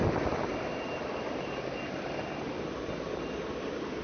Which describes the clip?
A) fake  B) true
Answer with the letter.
B